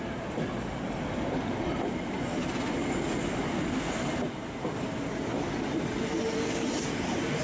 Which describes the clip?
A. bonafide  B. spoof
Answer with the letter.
A